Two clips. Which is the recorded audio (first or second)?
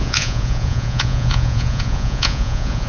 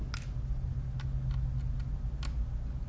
second